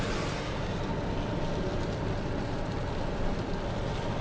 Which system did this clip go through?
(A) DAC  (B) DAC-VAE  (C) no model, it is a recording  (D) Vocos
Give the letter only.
C